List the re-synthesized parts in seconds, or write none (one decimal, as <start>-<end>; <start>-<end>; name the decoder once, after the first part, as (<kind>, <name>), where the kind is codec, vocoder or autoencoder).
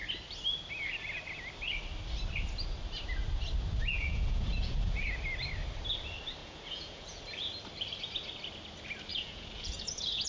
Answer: 3.8-5.1 (vocoder, Vocos); 6.4-7.2; 9.1-10.3